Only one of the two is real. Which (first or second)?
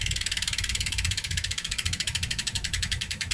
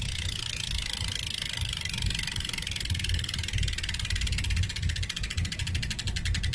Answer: second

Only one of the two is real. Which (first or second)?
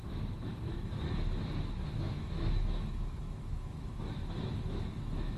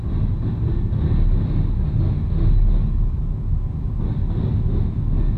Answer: second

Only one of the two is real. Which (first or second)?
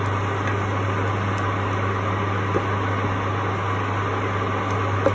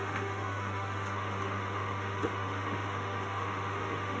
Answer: first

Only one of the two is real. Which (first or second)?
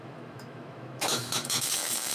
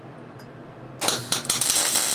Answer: second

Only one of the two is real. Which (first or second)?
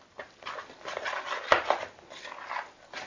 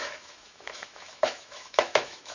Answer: first